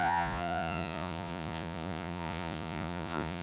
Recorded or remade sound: remade